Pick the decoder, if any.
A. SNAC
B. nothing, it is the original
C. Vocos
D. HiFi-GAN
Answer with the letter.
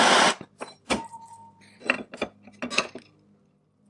B